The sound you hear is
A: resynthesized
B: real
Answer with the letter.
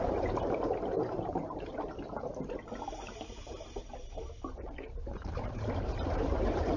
A